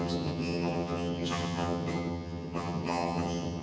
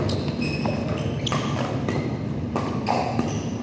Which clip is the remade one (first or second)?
first